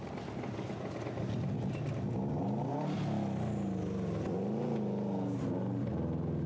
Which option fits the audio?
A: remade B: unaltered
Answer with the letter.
B